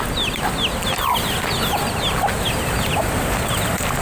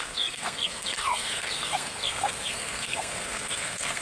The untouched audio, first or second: first